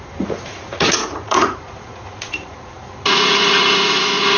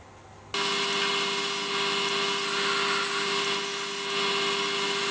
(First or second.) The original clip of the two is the second